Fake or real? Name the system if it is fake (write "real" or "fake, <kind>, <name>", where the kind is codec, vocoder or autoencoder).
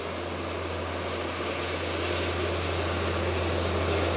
real